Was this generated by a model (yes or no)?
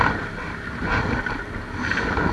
no